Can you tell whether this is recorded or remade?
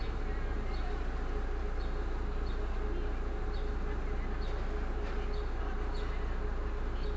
recorded